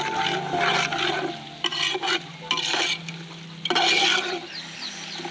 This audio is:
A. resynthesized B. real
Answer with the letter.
B